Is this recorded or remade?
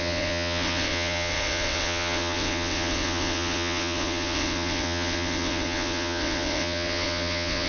remade